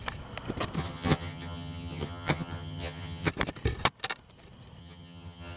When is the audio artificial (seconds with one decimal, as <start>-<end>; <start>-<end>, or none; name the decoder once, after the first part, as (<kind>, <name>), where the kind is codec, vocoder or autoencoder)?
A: 0.8-3.3 (vocoder, HiFi-GAN); 4.8-5.6